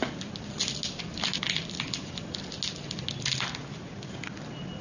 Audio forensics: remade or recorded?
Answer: recorded